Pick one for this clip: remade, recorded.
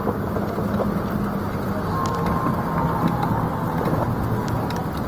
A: recorded